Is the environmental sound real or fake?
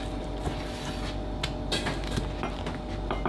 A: real